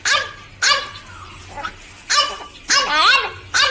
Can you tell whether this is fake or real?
real